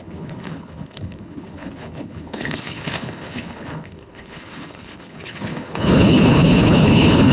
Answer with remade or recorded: remade